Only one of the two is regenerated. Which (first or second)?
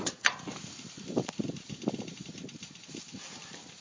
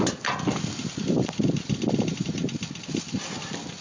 first